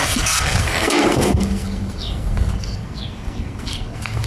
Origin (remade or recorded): remade